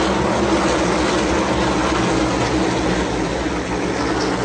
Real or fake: real